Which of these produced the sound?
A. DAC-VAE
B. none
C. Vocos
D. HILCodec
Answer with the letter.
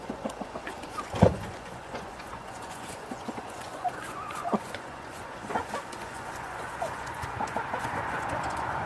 C